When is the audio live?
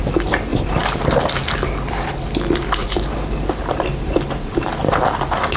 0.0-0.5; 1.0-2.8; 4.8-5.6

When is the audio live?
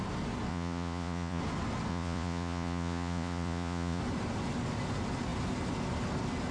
0.0-0.5; 1.4-1.9; 4.0-6.5